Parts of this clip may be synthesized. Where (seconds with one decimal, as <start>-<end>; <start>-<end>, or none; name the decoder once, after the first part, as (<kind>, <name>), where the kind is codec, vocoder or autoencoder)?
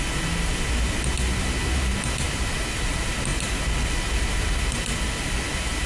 none